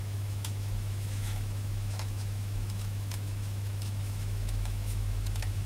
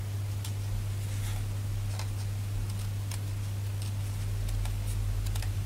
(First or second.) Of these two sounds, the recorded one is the second